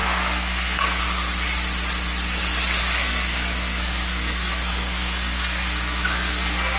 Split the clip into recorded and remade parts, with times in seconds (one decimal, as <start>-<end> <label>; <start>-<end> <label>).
0.0-1.0 remade; 1.0-2.8 recorded; 2.8-6.8 remade